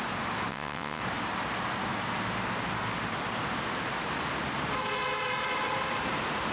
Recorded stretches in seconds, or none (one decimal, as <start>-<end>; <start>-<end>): 0.0-0.5; 1.0-6.5